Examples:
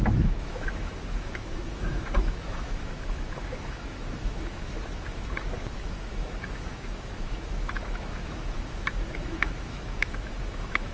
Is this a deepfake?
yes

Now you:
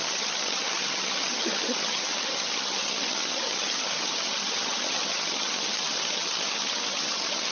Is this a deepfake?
yes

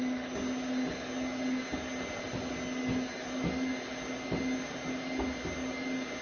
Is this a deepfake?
no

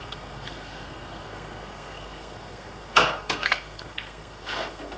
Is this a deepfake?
yes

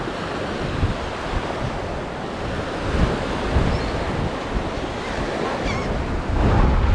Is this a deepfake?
no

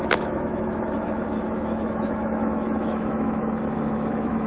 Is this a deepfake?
yes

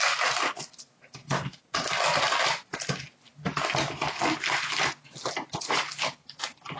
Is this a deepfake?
no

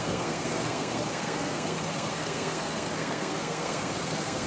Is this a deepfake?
yes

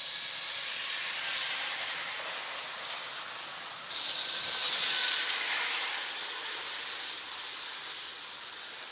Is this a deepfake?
no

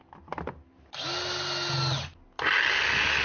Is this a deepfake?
no